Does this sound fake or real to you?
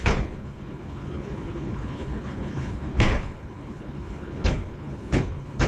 fake